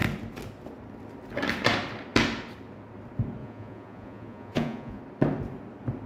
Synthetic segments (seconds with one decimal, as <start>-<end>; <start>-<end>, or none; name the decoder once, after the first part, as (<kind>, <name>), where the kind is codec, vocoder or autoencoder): 3.4-5.0 (vocoder, Vocos)